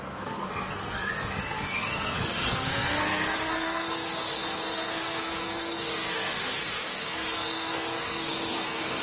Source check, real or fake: fake